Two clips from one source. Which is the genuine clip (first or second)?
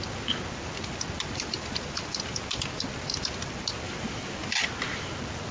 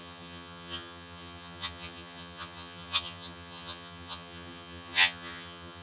first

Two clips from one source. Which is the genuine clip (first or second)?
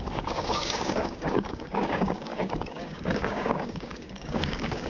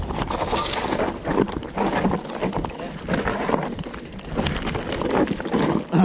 second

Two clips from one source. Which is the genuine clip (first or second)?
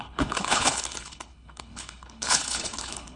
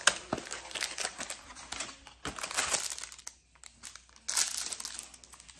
second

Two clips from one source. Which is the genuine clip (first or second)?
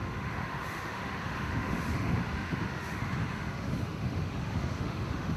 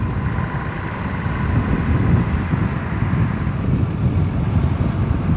second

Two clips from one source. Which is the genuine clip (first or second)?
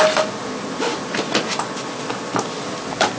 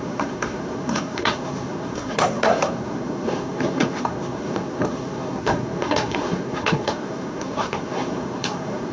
first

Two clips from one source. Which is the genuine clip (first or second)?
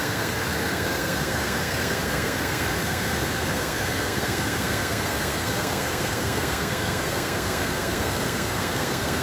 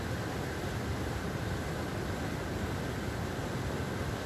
second